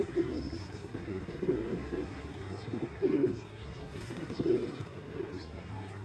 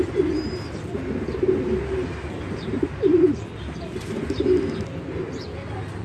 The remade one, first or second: first